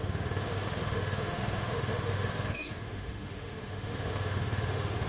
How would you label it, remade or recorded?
remade